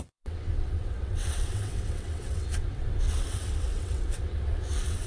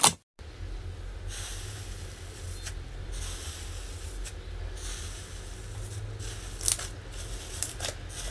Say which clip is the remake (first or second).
first